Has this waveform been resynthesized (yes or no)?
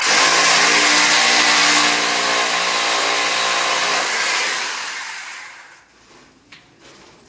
no